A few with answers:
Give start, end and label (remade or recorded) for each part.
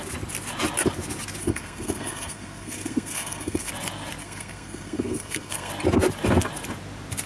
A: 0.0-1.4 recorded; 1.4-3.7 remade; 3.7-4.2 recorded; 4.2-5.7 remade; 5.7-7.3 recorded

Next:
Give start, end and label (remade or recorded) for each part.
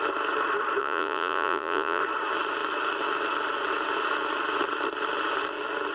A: 0.0-0.8 recorded; 0.8-2.0 remade; 2.0-5.9 recorded